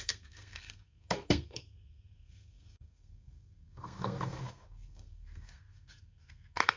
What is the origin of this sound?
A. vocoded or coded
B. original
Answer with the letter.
A